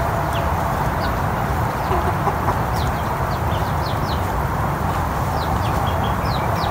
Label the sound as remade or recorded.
remade